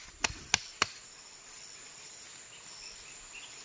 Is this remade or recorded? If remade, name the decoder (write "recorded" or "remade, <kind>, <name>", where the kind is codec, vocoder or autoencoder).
recorded